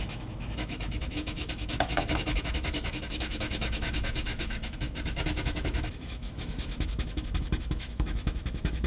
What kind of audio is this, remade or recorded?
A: remade